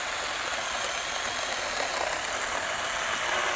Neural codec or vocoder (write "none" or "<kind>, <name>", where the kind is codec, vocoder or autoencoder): none